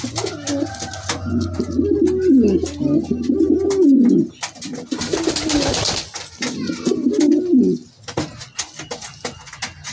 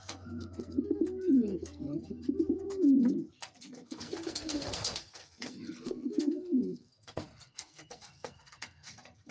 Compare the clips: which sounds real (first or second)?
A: first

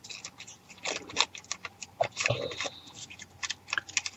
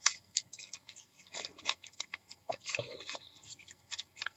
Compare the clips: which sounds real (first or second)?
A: first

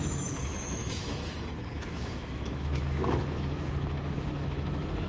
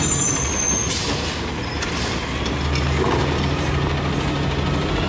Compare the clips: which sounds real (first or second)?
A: second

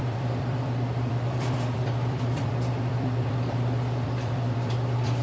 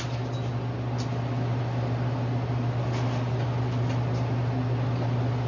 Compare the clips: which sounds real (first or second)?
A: second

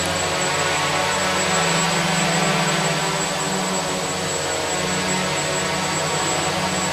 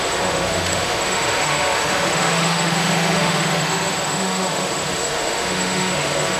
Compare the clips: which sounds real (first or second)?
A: first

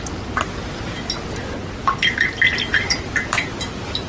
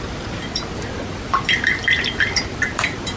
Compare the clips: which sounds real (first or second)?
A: first